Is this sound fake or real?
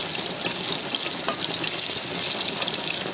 real